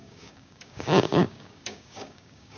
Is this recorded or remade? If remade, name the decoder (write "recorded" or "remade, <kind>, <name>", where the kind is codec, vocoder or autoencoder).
remade, codec, DAC